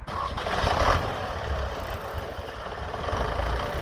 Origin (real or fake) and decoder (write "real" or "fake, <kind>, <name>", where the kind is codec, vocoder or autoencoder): real